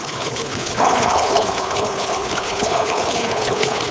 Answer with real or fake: fake